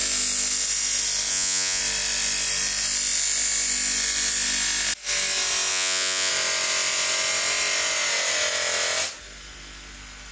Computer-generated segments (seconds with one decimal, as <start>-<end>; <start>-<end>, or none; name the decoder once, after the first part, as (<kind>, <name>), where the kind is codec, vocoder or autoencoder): 1.3-1.8 (vocoder, Vocos); 5.7-6.3